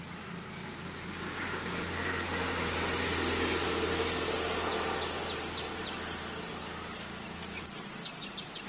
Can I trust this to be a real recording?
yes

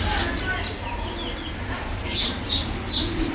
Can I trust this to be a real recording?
yes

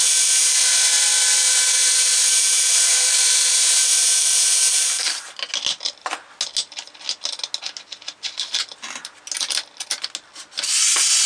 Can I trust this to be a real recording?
yes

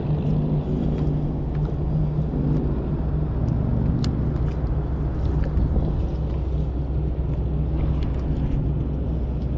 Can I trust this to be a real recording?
yes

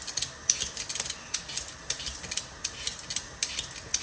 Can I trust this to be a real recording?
yes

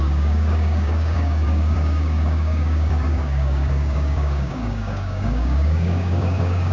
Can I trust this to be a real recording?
no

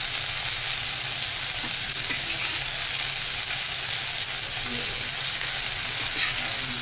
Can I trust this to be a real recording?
yes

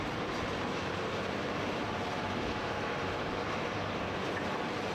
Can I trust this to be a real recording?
no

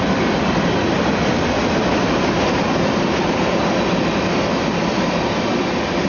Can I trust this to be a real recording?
yes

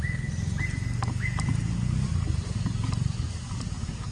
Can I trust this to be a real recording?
yes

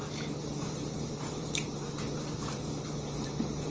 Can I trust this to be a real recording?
no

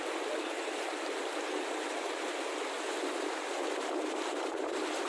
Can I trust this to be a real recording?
yes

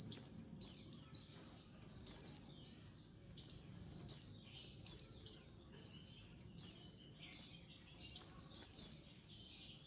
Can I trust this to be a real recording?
yes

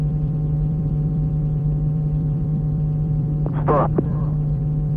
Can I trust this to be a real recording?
no